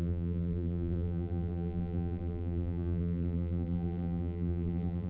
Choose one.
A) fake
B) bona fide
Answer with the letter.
A